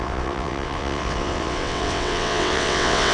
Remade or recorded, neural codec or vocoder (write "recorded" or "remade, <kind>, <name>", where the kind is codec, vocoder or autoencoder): remade, vocoder, WaveNeXt